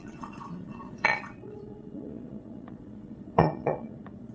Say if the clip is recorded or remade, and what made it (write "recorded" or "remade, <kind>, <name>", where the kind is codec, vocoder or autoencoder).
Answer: remade, vocoder, Vocos